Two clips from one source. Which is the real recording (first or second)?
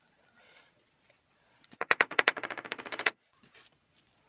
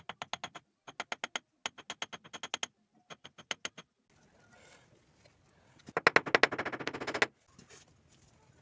second